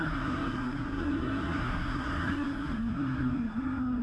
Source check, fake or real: fake